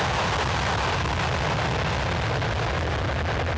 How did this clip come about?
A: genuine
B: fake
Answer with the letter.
A